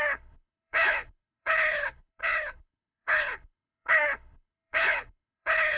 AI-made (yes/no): yes